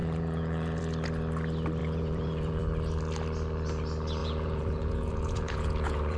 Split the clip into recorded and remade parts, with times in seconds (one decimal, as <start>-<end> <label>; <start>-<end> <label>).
0.0-0.8 remade; 0.8-1.8 recorded; 1.8-2.6 remade; 2.6-4.2 recorded; 4.2-6.2 remade